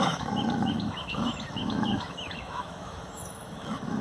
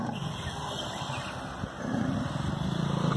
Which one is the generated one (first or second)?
first